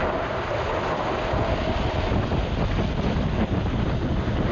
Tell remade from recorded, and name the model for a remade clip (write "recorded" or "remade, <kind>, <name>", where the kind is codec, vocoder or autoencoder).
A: recorded